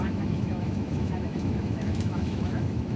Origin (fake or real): fake